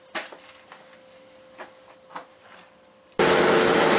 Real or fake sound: real